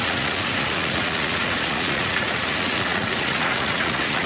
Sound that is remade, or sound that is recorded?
remade